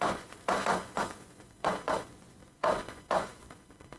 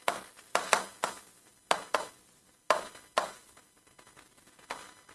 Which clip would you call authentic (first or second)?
second